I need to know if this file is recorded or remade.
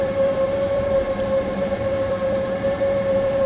remade